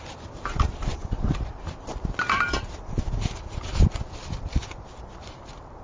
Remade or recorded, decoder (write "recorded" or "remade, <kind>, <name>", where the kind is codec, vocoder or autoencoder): recorded